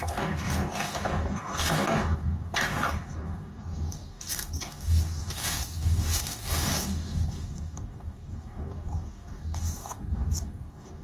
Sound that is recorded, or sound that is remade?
remade